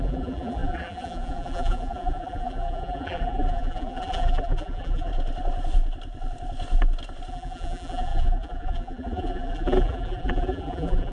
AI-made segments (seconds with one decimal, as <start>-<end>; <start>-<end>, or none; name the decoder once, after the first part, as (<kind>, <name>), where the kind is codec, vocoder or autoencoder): 0.0-5.1 (vocoder, BigVGAN v2); 7.3-11.1